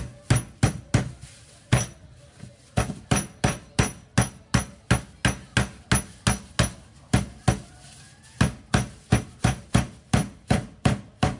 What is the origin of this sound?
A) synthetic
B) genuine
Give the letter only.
B